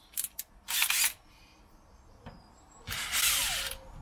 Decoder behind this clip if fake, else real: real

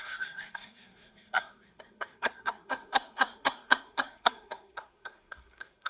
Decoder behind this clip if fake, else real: fake, codec, SNAC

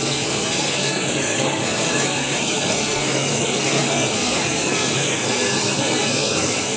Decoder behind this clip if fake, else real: fake, codec, SNAC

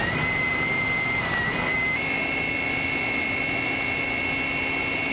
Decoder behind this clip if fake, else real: real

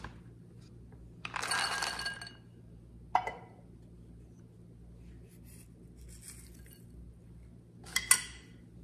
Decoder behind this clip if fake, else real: real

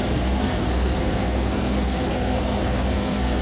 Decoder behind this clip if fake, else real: fake, codec, SNAC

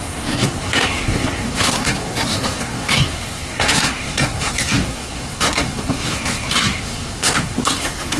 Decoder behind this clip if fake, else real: fake, codec, SNAC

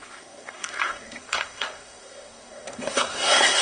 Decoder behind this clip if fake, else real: fake, codec, SNAC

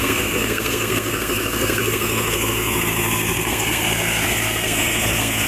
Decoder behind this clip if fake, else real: fake, codec, SNAC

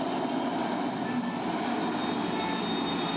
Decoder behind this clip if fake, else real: real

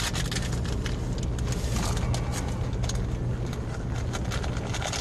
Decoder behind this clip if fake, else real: real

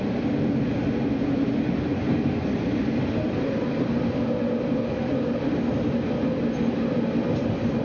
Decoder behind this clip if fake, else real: real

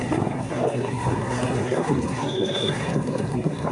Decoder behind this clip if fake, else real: fake, codec, SNAC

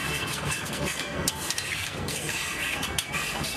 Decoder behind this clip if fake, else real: fake, codec, SNAC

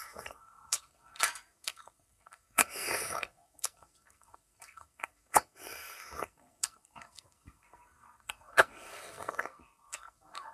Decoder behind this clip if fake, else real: fake, codec, SNAC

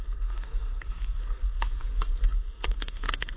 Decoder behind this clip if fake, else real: fake, codec, SNAC